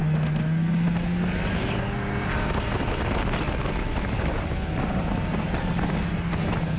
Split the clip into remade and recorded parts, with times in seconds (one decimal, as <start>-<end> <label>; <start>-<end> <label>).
0.0-6.8 recorded